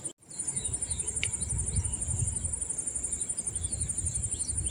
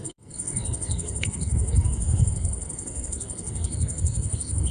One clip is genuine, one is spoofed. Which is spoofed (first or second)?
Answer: second